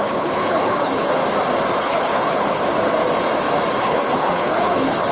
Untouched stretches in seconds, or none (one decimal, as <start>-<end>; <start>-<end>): 1.2-1.8; 2.6-3.8